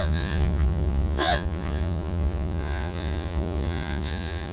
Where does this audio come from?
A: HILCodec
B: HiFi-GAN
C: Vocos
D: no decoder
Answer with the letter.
C